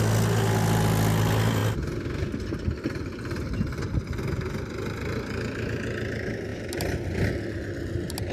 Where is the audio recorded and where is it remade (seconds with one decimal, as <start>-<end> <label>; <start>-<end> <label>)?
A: 0.0-8.3 recorded